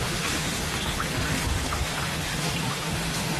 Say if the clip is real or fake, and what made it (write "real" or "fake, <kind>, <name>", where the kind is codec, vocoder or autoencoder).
fake, autoencoder, DAC-VAE